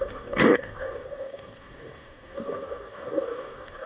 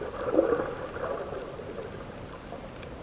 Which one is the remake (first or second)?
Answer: first